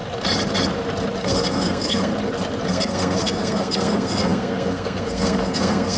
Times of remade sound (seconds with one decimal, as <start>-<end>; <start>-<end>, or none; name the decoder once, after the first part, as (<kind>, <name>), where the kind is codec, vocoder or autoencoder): 1.2-2.1 (codec, SNAC); 2.7-6.0